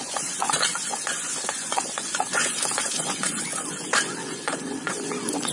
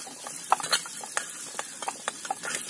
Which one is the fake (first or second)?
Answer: first